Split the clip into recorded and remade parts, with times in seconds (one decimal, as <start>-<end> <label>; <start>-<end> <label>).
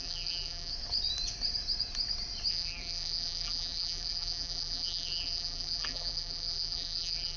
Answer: 0.0-0.7 remade; 0.7-2.5 recorded; 2.5-7.4 remade